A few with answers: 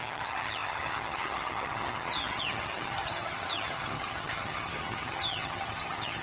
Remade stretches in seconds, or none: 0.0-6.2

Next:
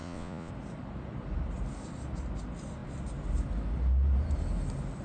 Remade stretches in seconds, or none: 0.0-0.5